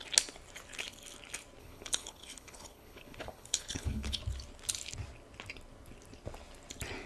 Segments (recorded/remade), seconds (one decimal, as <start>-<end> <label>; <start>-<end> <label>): 0.0-1.6 recorded; 1.6-4.2 remade; 4.2-7.1 recorded